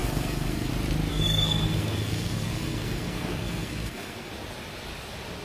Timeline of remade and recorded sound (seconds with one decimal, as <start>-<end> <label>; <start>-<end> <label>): 0.0-0.7 remade; 0.7-1.1 recorded; 1.1-4.3 remade; 4.3-5.4 recorded